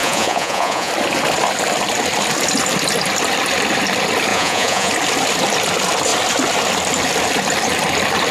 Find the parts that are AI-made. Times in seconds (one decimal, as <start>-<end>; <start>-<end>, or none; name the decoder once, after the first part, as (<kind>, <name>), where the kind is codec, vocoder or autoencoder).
0.0-0.9 (vocoder, Vocos); 4.3-4.9